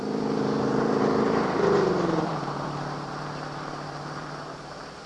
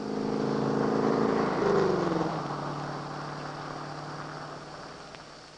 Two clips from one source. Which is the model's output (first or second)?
first